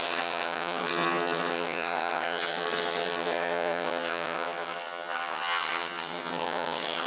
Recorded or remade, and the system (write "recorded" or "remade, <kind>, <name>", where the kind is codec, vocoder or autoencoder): remade, vocoder, HiFi-GAN